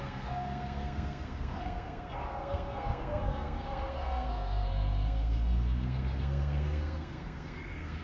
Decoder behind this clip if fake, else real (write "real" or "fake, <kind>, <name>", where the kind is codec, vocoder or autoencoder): fake, codec, SNAC